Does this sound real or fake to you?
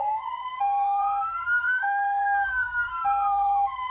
fake